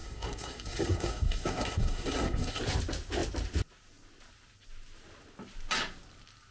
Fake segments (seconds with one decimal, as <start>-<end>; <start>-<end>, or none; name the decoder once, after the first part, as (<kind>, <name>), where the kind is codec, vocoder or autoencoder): 0.0-2.6 (codec, SNAC)